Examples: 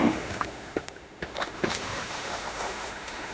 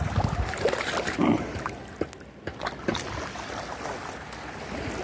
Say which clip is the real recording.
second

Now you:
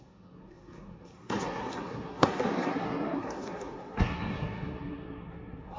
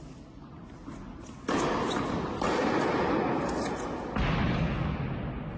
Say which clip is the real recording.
second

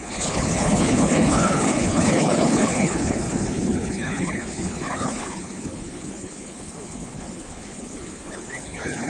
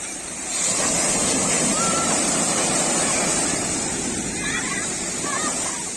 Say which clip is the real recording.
second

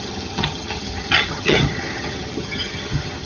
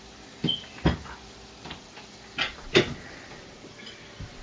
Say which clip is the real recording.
second